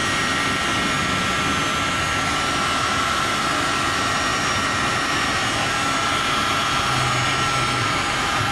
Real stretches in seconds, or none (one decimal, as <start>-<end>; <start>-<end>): 0.0-8.5